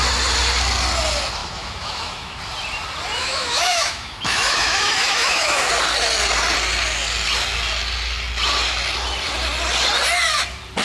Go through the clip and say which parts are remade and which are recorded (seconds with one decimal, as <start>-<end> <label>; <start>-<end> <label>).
0.0-1.4 recorded; 1.4-2.4 remade; 2.4-3.2 recorded; 3.2-5.7 remade; 5.7-10.8 recorded